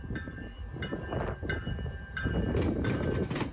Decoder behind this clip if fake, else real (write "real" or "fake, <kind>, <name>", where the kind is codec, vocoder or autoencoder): real